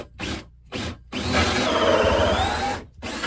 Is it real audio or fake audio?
real